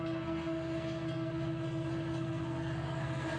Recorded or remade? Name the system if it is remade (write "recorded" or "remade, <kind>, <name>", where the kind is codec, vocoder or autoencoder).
remade, codec, SNAC